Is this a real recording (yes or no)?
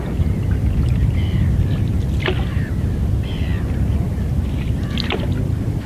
yes